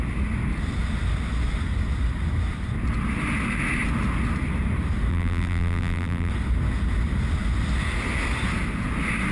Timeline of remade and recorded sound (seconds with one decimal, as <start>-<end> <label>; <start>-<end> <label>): 0.0-5.1 recorded; 5.1-6.3 remade; 6.3-9.3 recorded